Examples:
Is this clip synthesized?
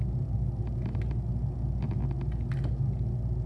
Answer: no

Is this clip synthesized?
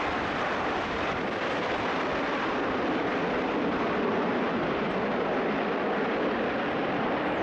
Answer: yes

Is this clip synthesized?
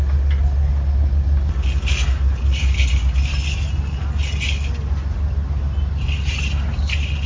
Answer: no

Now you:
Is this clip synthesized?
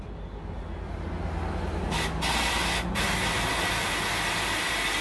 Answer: no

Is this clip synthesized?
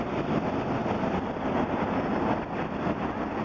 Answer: no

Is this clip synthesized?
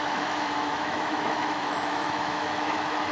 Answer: yes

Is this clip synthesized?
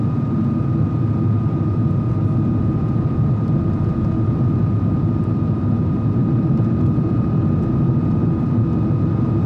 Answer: no